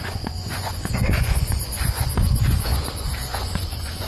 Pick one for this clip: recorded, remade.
remade